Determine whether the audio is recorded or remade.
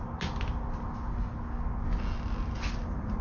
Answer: recorded